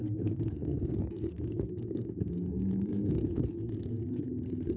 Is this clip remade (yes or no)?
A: yes